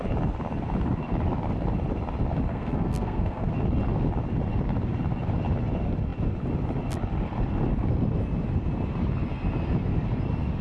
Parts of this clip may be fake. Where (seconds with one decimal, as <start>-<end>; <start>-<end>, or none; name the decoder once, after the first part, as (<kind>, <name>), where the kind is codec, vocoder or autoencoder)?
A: 2.5-3.5 (codec, SNAC)